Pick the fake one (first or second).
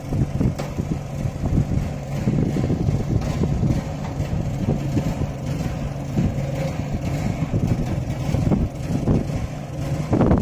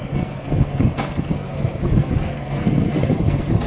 second